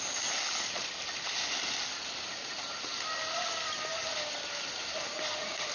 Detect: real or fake real